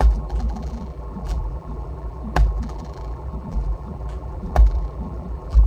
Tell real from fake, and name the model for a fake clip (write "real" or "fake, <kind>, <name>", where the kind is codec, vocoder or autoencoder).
fake, vocoder, BigVGAN v2